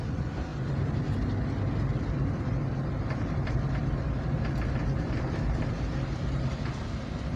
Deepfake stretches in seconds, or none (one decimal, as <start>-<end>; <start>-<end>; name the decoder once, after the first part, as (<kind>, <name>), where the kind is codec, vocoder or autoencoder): none